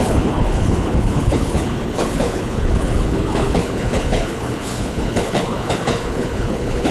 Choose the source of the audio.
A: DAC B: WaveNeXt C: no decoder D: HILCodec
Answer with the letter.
D